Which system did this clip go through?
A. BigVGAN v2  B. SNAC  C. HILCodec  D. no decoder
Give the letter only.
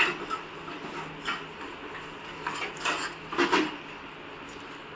D